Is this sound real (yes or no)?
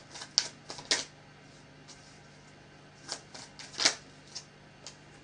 yes